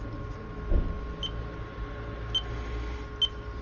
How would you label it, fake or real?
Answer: real